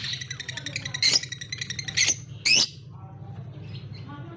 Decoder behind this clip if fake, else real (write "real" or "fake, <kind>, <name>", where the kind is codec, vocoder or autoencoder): real